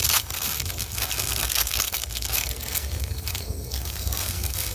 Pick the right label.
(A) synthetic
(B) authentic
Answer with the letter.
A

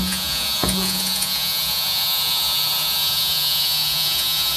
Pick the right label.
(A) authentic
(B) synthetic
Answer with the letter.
B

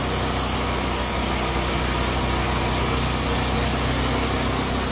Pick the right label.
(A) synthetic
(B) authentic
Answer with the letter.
B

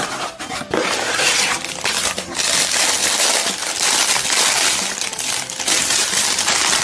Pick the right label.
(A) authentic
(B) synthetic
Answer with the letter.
A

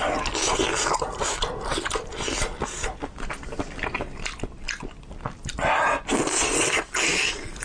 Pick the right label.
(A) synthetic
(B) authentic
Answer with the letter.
B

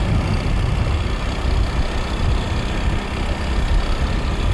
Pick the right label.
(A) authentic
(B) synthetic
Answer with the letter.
A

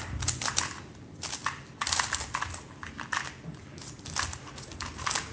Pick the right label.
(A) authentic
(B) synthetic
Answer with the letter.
A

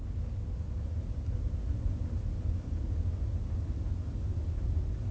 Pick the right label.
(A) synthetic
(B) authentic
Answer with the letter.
B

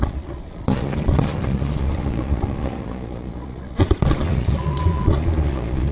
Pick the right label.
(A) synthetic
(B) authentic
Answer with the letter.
A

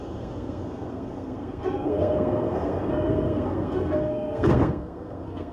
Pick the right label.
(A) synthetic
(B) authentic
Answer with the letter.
A